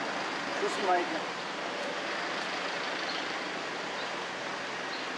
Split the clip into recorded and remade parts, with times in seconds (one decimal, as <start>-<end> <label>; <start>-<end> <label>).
0.0-0.5 recorded; 0.5-3.6 remade; 3.6-5.2 recorded